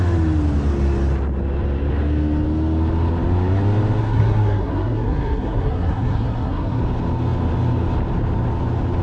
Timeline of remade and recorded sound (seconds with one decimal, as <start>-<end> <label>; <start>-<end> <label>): 0.0-4.0 recorded; 4.0-6.8 remade; 6.8-9.0 recorded